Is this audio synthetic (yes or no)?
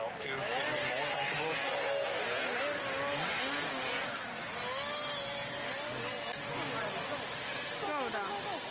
no